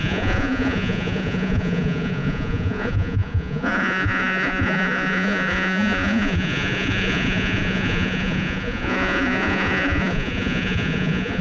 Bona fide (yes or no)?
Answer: no